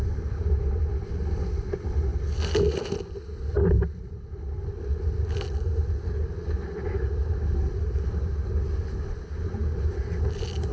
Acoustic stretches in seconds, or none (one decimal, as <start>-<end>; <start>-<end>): 0.0-10.7